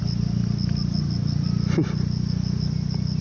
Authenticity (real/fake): real